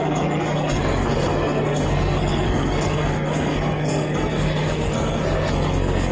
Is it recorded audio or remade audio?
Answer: remade